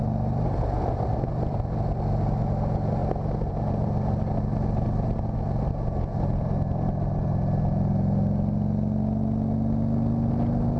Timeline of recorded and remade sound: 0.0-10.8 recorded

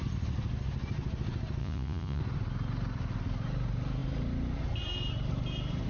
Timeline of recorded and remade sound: 0.0-1.6 recorded; 1.6-2.2 remade; 2.2-5.9 recorded

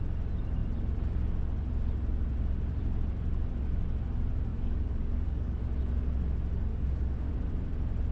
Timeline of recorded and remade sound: 0.0-4.5 recorded; 4.5-5.6 remade; 5.6-6.7 recorded; 6.7-7.3 remade; 7.3-8.1 recorded

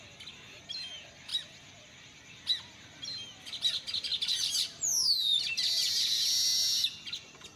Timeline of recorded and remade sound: 0.0-1.3 recorded; 1.3-2.2 remade; 2.2-7.6 recorded

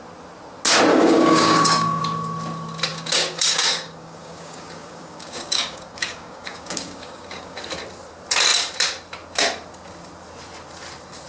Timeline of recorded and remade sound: 0.0-0.9 recorded; 0.9-2.0 remade; 2.0-2.9 recorded; 2.9-7.6 remade; 7.6-11.3 recorded

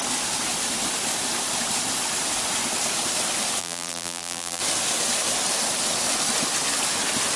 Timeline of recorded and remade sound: 0.0-3.6 recorded; 3.6-4.6 remade; 4.6-7.4 recorded

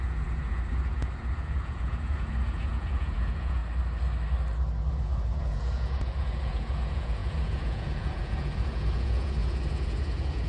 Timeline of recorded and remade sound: 0.0-3.6 remade; 3.6-4.9 recorded; 4.9-10.5 remade

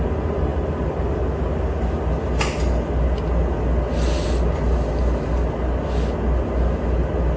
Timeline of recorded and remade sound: 0.0-7.4 recorded